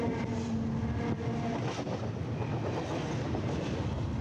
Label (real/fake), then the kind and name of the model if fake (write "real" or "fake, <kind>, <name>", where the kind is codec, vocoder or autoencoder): real